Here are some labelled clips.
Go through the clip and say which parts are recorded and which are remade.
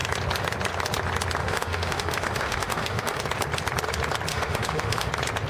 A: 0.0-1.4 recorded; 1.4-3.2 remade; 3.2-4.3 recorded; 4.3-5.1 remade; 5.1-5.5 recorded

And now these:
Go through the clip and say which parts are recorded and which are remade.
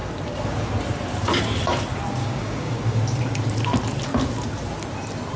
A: 0.0-2.2 recorded; 2.2-3.0 remade; 3.0-5.4 recorded